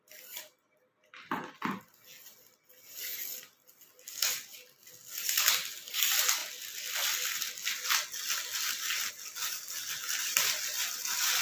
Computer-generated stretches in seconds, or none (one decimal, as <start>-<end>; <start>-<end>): none